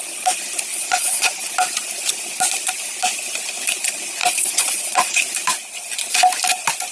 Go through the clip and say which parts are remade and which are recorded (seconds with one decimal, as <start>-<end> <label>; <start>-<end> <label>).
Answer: 0.0-0.7 recorded; 0.7-1.5 remade; 1.5-4.2 recorded; 4.2-5.2 remade; 5.2-6.9 recorded